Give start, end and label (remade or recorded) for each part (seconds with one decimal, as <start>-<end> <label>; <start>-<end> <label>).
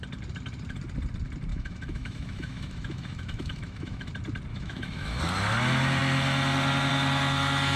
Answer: 0.0-1.5 recorded; 1.5-4.1 remade; 4.1-4.5 recorded; 4.5-5.2 remade; 5.2-7.8 recorded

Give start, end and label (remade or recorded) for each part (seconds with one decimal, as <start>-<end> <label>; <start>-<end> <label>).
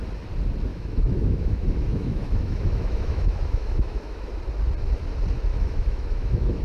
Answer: 0.0-0.7 recorded; 0.7-4.4 remade; 4.4-5.5 recorded; 5.5-6.6 remade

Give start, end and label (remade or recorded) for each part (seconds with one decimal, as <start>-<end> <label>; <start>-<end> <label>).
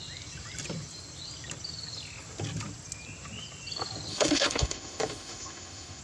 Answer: 0.0-4.1 recorded; 4.1-6.0 remade